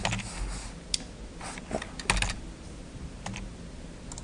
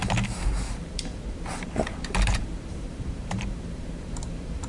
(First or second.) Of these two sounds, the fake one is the second